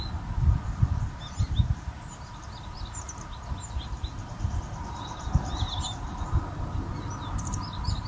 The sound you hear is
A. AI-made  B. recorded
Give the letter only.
B